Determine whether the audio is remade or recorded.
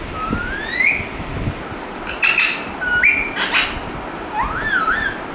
recorded